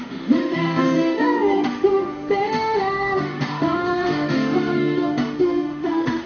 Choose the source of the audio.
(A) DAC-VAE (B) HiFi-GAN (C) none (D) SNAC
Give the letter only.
A